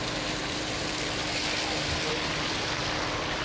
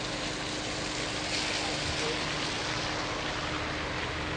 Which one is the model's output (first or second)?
first